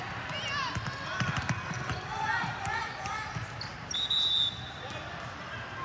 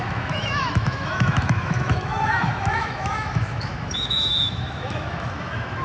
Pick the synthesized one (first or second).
second